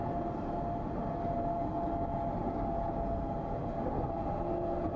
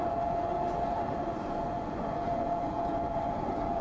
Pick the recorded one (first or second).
first